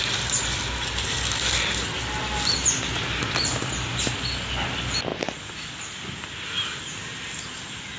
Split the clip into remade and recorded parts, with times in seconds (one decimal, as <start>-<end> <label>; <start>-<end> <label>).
0.0-8.0 recorded